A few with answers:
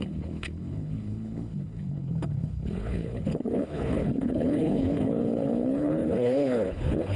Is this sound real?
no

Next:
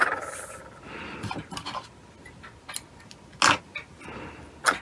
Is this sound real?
yes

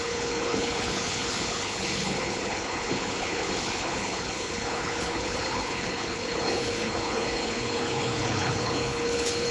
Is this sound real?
no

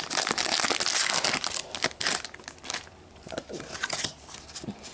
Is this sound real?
yes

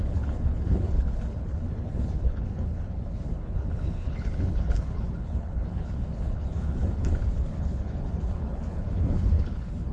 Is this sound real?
no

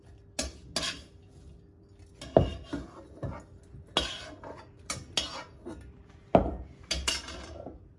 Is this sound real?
yes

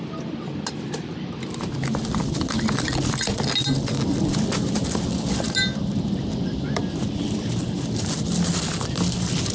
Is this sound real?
yes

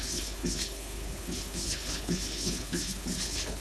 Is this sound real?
no